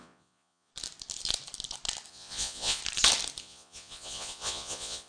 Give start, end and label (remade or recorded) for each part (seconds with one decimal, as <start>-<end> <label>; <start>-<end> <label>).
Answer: 0.0-0.7 remade; 0.7-2.1 recorded; 2.1-2.8 remade; 2.8-3.4 recorded; 3.4-5.1 remade